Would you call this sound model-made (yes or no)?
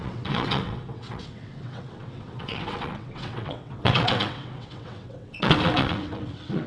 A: yes